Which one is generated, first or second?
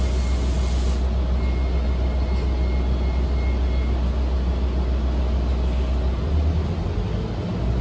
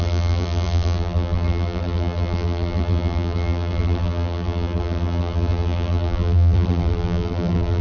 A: second